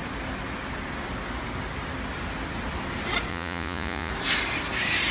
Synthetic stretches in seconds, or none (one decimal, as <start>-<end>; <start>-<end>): 3.3-4.1